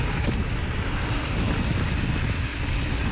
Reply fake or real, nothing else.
real